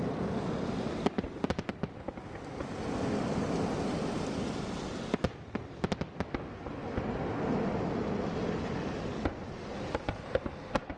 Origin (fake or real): real